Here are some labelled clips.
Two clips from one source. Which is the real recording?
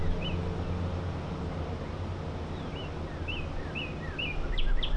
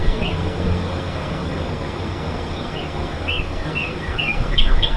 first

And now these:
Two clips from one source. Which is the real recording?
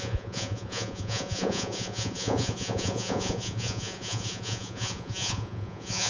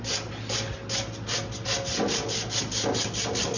second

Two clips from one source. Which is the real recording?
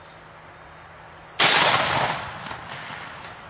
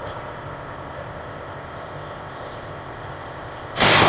first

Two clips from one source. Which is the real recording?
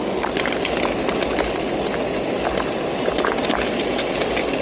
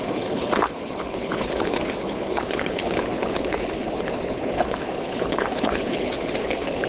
first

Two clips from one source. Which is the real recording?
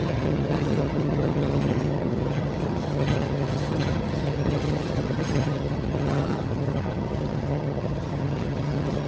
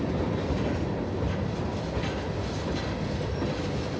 second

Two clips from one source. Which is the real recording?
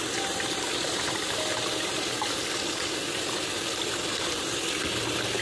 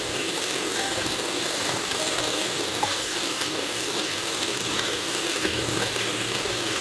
first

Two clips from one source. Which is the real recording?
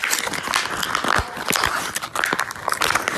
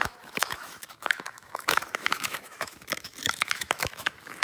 first